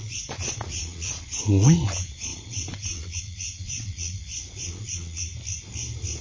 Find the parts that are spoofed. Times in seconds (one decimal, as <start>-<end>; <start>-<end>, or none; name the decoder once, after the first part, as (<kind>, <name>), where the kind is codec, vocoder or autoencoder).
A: 0.0-5.3 (vocoder, Vocos)